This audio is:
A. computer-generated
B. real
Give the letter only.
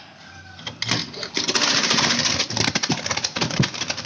B